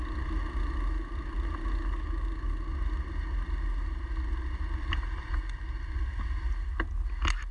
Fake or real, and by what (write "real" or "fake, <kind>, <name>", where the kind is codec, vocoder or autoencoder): real